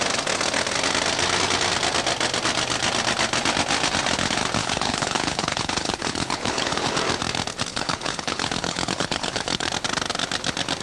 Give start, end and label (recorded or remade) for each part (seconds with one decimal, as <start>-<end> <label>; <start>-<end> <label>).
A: 0.0-4.6 recorded; 4.6-6.9 remade; 6.9-7.7 recorded; 7.7-9.7 remade; 9.7-10.8 recorded